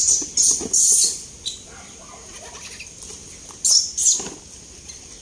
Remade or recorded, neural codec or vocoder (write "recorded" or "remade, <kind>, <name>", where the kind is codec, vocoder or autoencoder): recorded